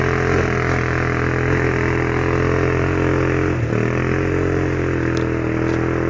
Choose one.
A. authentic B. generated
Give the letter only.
A